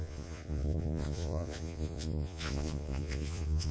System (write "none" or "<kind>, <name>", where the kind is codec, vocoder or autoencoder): vocoder, Vocos